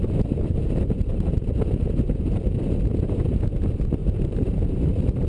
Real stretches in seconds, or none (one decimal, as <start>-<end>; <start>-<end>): 0.0-1.1; 3.0-4.0; 4.6-5.3

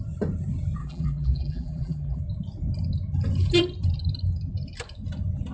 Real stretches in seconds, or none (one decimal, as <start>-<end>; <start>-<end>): 0.0-0.8; 2.2-5.5

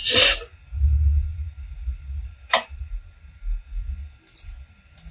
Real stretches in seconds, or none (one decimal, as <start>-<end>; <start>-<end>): 0.0-1.3; 2.8-5.1

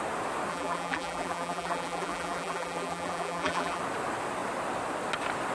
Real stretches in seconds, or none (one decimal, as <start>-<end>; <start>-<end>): 0.0-0.5; 3.8-5.5

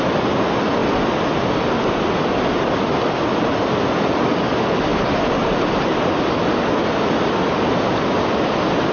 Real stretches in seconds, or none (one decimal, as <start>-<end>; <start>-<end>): 0.0-4.9; 6.1-8.9

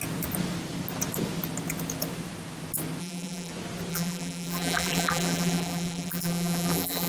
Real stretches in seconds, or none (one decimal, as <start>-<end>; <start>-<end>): 0.0-3.0; 3.5-3.9